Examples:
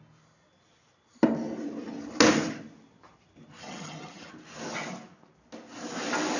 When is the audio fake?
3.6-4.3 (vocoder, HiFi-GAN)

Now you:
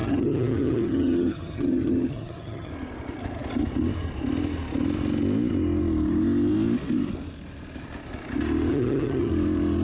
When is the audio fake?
0.0-2.7 (vocoder, HiFi-GAN); 8.7-9.3

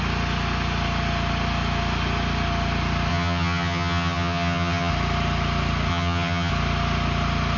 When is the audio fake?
3.1-4.9 (vocoder, HiFi-GAN); 5.9-6.5

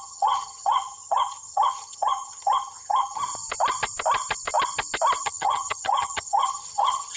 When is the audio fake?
0.0-3.2 (vocoder, HiFi-GAN); 5.2-7.2

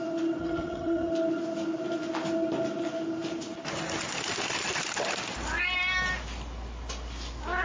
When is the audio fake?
0.4-1.1 (vocoder, HiFi-GAN)

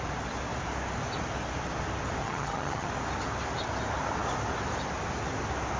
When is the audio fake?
2.2-2.9 (vocoder, HiFi-GAN)